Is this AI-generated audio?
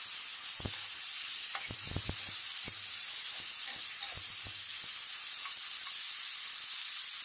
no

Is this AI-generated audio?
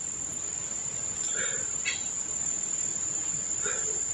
no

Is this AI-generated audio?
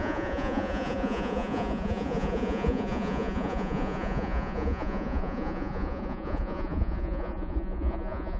yes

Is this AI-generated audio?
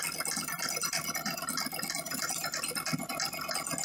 no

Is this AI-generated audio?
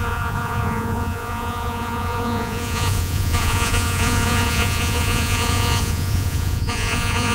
yes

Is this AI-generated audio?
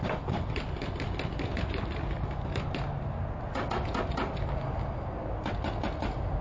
no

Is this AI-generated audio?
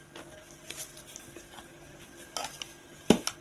no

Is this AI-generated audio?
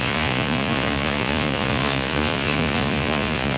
yes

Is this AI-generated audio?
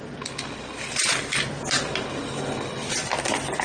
no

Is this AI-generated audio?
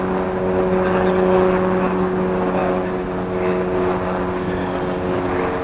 no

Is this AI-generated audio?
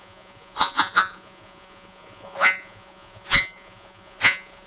yes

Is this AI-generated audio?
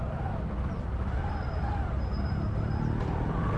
no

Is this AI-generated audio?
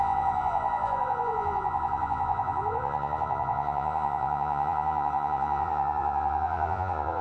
yes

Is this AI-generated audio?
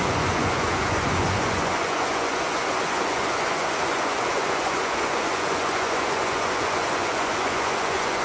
yes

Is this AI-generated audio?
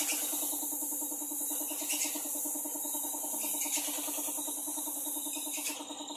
no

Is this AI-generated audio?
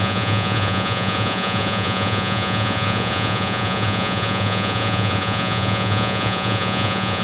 yes